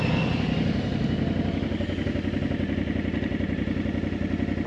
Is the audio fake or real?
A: real